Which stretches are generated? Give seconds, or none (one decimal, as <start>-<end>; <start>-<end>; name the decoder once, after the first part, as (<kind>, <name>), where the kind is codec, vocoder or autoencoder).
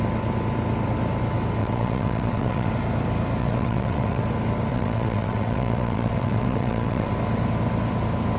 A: 1.6-2.7 (vocoder, WaveNeXt); 3.4-4.2; 4.7-7.1